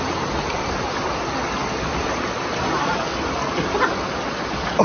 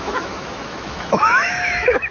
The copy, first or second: second